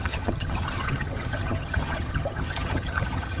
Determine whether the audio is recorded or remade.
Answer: remade